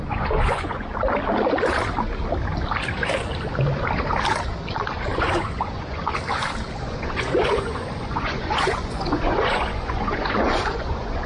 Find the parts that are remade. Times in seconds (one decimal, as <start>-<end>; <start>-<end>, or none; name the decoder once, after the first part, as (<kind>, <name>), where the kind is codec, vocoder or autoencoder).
0.0-0.9 (vocoder, Vocos); 5.2-6.1; 6.8-11.3

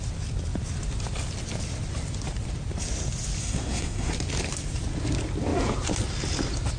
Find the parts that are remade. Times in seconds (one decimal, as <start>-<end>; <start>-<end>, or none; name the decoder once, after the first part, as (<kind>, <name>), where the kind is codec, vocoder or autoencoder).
3.4-4.1 (codec, SNAC)

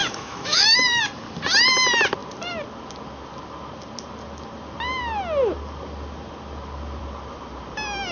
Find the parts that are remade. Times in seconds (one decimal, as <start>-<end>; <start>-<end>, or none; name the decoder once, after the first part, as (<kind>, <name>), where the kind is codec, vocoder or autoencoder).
0.0-1.0 (autoencoder, DAC-VAE)